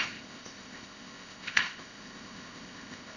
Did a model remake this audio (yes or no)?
yes